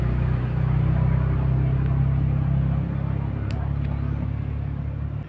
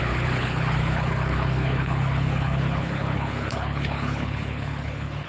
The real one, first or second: first